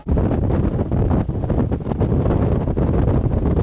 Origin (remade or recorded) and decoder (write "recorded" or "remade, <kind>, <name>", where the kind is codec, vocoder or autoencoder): recorded